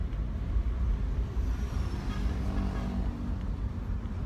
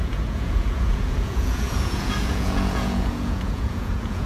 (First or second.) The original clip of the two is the first